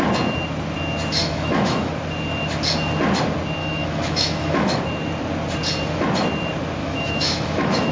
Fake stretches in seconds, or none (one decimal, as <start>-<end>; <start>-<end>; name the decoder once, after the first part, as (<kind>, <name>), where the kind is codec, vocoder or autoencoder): 1.2-1.9 (autoencoder, DAC-VAE); 3.6-4.8; 6.8-7.9